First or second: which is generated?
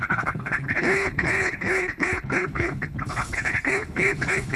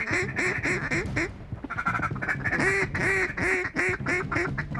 first